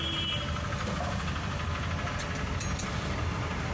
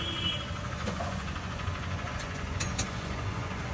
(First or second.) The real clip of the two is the first